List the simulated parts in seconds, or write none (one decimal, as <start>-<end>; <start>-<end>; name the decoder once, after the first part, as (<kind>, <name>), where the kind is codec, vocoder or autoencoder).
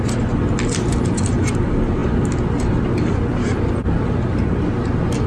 none